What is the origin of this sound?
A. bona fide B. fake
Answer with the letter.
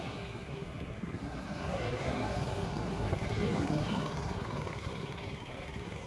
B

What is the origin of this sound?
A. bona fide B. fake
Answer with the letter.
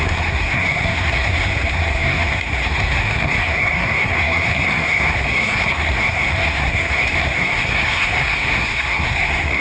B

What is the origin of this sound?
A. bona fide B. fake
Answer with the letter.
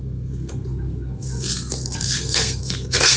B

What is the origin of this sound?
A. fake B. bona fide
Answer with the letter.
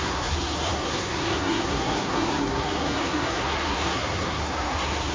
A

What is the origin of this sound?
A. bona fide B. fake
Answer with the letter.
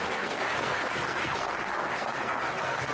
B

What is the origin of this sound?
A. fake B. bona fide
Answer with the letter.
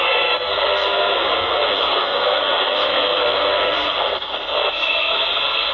A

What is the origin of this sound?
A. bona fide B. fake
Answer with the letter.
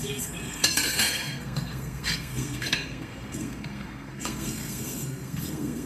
B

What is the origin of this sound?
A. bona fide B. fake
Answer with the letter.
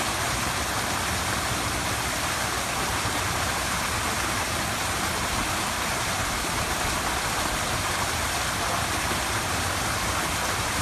A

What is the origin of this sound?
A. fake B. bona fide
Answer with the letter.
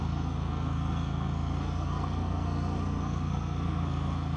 A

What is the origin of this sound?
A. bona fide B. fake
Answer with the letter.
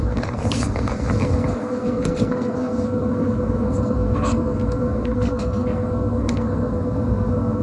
B